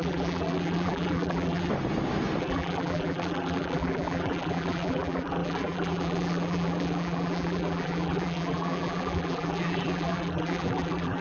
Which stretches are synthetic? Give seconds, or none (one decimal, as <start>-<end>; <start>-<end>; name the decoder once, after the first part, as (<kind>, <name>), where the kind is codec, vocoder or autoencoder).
0.0-1.7 (vocoder, BigVGAN v2); 2.4-11.2